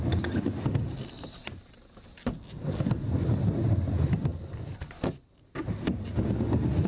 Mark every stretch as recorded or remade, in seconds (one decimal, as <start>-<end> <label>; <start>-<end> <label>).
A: 0.0-6.9 recorded